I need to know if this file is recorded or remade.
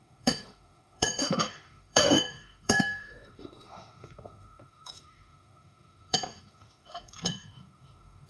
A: remade